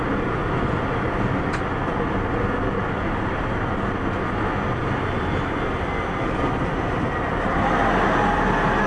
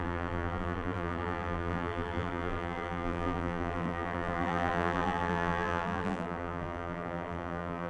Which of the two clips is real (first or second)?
first